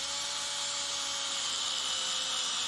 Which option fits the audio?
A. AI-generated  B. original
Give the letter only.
B